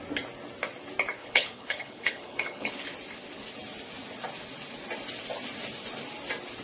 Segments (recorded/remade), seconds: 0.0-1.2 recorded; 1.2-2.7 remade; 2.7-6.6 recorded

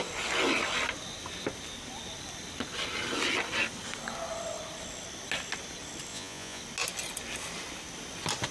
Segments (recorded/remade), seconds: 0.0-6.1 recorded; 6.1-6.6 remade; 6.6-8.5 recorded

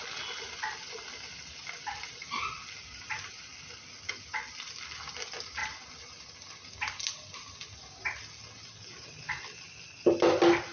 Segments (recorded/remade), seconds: 0.0-5.6 recorded; 5.6-6.2 remade; 6.2-10.7 recorded

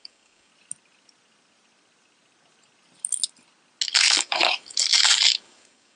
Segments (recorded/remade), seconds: 0.0-0.5 remade; 0.5-4.1 recorded; 4.1-6.0 remade